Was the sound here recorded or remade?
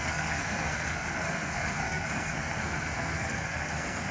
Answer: remade